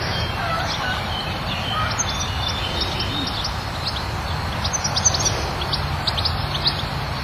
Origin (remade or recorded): recorded